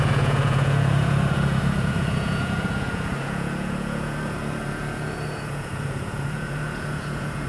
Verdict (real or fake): fake